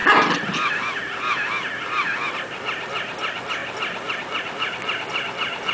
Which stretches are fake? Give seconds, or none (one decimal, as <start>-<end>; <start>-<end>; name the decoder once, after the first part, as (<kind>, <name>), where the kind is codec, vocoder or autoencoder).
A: none